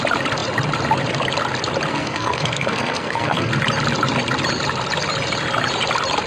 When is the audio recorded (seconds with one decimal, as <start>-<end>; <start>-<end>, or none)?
0.0-1.9; 3.5-6.3